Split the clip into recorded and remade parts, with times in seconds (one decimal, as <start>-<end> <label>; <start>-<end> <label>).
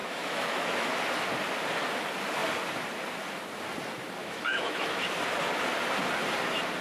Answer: 0.0-0.9 remade; 0.9-4.2 recorded; 4.2-5.0 remade; 5.0-6.8 recorded